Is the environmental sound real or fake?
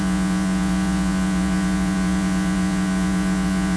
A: fake